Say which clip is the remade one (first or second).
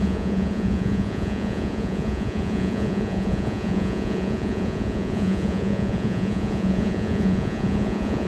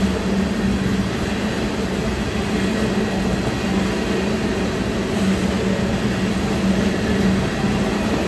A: first